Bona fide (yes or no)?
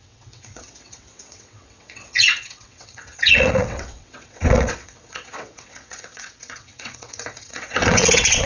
no